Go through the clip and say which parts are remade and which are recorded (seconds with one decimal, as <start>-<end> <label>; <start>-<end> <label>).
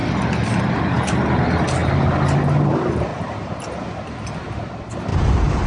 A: 0.0-0.6 remade; 0.6-3.1 recorded; 3.1-3.8 remade; 3.8-5.7 recorded